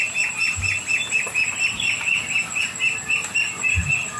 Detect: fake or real real